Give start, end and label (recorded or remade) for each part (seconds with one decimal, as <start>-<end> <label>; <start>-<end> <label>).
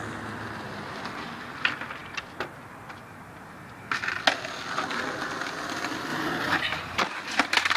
0.0-7.8 recorded